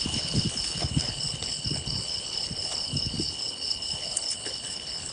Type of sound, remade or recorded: remade